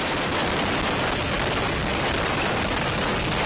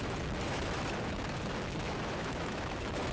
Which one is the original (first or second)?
first